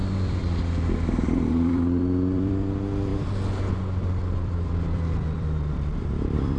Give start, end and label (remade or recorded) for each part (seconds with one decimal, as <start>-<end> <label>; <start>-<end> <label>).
0.0-3.1 remade; 3.1-3.7 recorded; 3.7-6.6 remade